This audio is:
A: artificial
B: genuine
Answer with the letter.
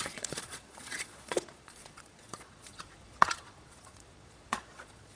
A